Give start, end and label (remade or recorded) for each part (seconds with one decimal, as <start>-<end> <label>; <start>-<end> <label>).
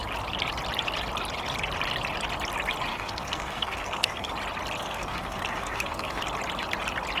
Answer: 0.0-2.9 recorded; 2.9-4.3 remade; 4.3-4.8 recorded; 4.8-6.2 remade; 6.2-7.2 recorded